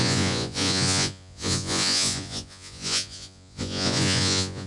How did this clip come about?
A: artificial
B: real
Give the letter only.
A